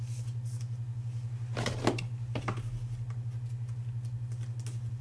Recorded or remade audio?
recorded